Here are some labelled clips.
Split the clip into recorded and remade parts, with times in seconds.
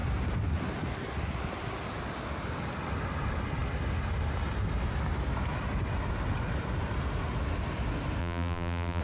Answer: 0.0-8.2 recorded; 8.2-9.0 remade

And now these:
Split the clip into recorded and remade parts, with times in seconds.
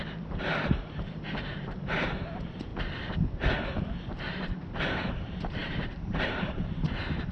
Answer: 0.0-2.7 remade; 2.7-4.3 recorded; 4.3-7.3 remade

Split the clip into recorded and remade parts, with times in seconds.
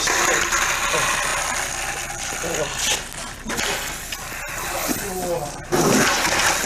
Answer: 0.0-6.7 recorded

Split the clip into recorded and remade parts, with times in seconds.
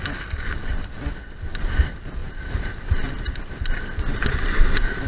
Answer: 0.0-2.2 recorded; 2.2-3.4 remade; 3.4-5.1 recorded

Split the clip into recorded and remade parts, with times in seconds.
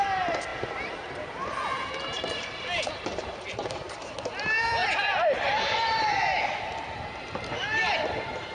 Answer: 0.0-0.5 remade; 0.5-1.1 recorded; 1.1-8.5 remade